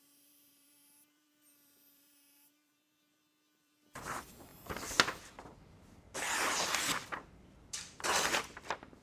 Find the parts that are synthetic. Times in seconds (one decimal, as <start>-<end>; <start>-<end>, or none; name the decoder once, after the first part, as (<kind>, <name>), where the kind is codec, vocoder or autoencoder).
0.0-4.5 (vocoder, BigVGAN v2); 7.4-9.0